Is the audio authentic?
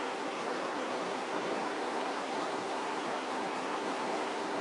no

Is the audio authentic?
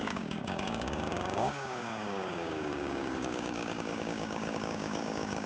no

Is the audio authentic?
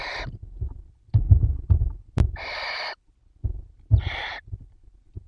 no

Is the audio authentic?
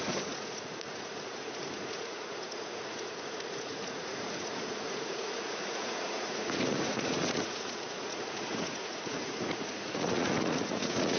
no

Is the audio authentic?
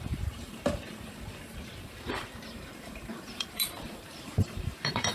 no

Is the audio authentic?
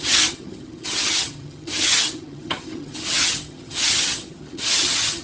no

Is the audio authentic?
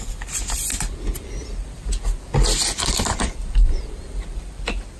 yes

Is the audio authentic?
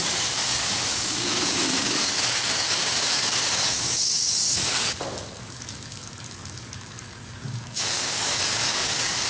no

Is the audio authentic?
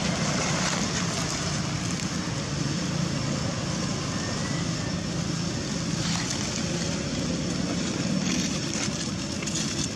yes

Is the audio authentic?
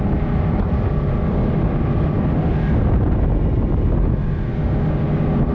yes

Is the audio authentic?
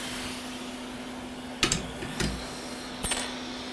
yes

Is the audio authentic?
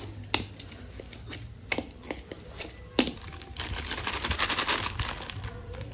yes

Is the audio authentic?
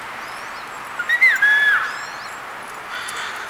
yes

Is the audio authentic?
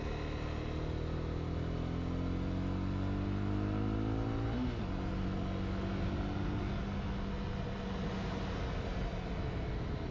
yes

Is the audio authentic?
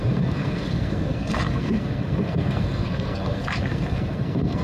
no